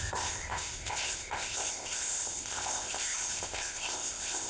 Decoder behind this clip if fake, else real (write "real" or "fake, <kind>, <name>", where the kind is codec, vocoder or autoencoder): fake, codec, ZipCodec